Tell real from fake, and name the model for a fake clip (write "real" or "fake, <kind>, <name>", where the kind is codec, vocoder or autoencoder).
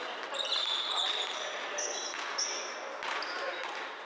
real